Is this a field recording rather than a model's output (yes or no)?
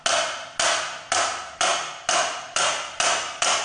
yes